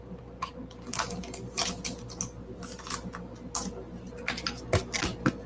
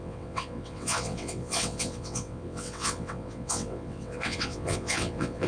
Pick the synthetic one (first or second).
second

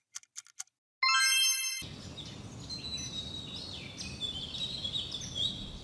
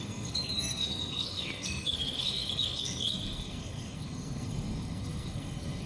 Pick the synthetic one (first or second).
second